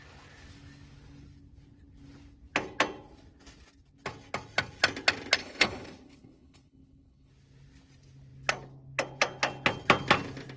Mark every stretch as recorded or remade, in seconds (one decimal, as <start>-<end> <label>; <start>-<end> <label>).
0.0-5.4 recorded; 5.4-7.3 remade; 7.3-10.6 recorded